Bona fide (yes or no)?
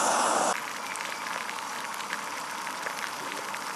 no